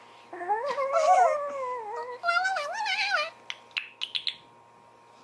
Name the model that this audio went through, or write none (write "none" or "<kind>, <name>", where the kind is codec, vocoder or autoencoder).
none